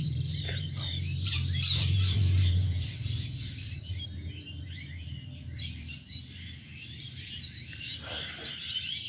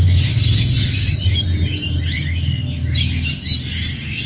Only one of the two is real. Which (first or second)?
second